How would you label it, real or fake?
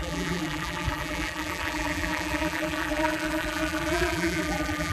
fake